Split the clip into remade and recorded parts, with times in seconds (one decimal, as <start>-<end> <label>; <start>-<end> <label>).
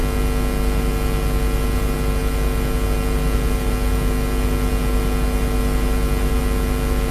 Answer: 0.0-7.1 recorded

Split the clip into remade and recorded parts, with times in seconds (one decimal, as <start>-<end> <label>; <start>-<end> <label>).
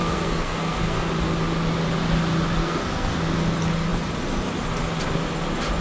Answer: 0.0-1.1 remade; 1.1-2.6 recorded; 2.6-3.2 remade; 3.2-5.8 recorded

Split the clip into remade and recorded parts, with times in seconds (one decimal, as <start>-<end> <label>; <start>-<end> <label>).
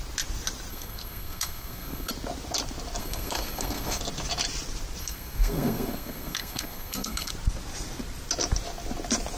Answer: 0.0-0.7 recorded; 0.7-2.1 remade; 2.1-3.0 recorded; 3.0-4.0 remade; 4.0-5.0 recorded; 5.0-7.3 remade; 7.3-9.4 recorded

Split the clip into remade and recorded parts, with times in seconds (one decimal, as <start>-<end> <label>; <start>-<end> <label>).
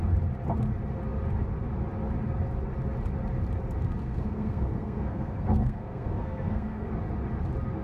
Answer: 0.0-4.0 recorded; 4.0-6.9 remade; 6.9-7.8 recorded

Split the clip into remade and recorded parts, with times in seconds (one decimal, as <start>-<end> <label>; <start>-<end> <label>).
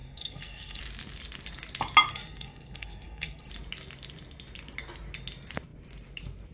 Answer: 0.0-0.8 remade; 0.8-2.1 recorded; 2.1-3.5 remade; 3.5-6.5 recorded